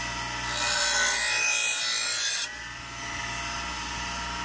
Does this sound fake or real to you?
real